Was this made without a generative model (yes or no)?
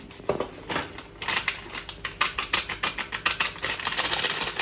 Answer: yes